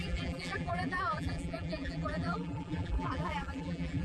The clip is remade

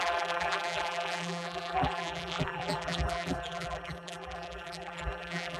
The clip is remade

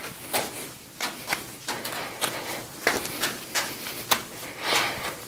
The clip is recorded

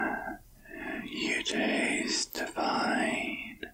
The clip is recorded